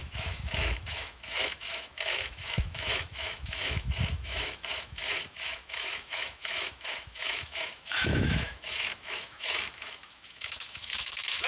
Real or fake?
fake